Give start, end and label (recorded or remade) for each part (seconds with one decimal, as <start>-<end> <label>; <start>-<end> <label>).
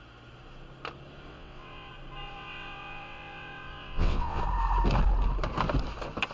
0.0-1.3 recorded; 1.3-1.9 remade; 1.9-2.3 recorded; 2.3-4.4 remade; 4.4-6.3 recorded